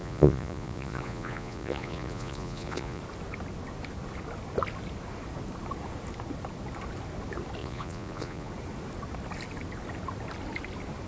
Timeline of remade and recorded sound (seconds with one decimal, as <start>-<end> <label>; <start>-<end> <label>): 0.0-3.0 remade; 3.0-7.6 recorded; 7.6-8.5 remade; 8.5-11.1 recorded